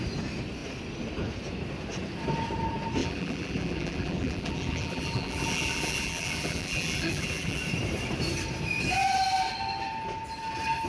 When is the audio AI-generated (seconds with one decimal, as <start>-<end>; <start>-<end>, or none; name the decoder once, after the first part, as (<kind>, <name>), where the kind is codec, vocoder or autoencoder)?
3.0-7.6 (vocoder, BigVGAN v2)